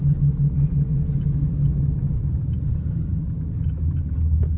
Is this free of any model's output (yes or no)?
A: yes